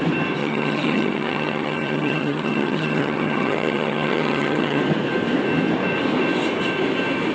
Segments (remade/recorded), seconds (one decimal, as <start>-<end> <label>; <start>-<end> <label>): 0.0-0.4 recorded; 0.4-4.8 remade; 4.8-7.3 recorded